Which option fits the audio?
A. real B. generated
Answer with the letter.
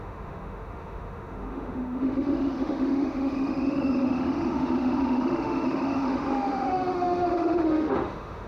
B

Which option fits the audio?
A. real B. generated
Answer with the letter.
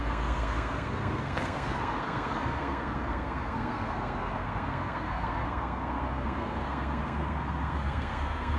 B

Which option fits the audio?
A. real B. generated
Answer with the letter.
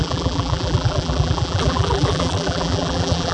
B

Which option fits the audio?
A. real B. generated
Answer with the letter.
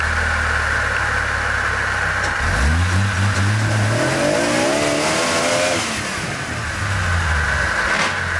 A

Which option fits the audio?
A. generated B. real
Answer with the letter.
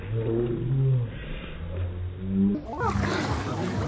B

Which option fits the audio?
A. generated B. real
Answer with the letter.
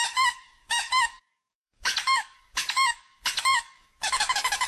A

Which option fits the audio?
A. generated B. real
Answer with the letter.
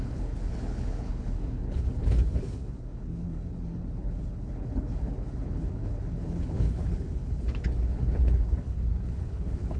A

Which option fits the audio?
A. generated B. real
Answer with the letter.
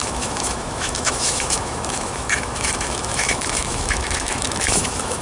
A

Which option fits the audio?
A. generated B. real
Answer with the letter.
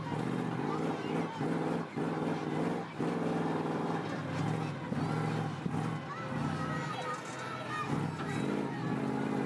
B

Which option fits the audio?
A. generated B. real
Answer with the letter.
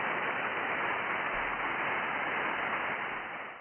B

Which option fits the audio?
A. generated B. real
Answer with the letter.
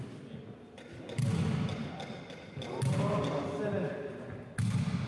B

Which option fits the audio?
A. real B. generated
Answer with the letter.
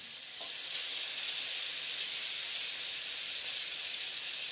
A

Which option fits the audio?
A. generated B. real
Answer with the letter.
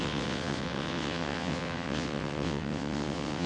A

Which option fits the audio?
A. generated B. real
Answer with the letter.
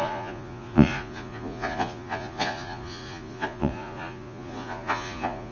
A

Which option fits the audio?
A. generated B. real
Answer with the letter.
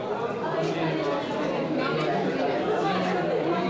B